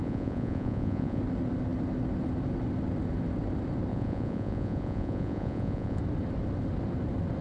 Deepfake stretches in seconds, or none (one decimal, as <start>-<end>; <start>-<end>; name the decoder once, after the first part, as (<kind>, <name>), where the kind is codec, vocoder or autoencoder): 0.0-1.2 (vocoder, Vocos); 3.9-6.0